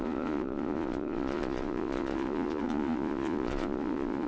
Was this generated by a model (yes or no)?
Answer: yes